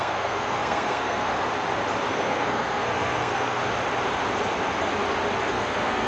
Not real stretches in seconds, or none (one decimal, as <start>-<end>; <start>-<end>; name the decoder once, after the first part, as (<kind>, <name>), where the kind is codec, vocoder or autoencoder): 0.0-1.3 (codec, SNAC); 2.1-3.6; 5.4-6.1